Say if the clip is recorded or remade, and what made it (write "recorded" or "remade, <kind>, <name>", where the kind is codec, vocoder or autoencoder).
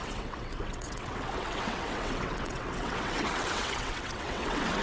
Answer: remade, vocoder, WaveNeXt